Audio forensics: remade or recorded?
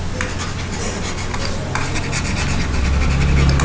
recorded